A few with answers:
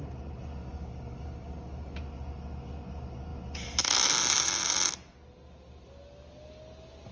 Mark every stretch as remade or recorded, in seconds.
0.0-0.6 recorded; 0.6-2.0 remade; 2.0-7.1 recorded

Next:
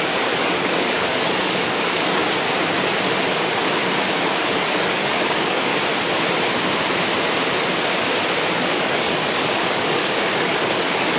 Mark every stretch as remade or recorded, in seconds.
0.0-2.2 remade; 2.2-4.4 recorded; 4.4-5.7 remade; 5.7-8.5 recorded; 8.5-11.2 remade

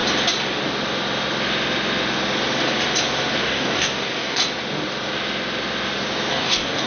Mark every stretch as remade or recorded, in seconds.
0.0-3.4 recorded; 3.4-4.4 remade; 4.4-6.3 recorded; 6.3-6.9 remade